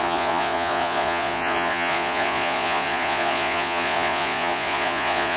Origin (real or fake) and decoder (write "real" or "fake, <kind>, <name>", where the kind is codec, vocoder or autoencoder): fake, vocoder, Vocos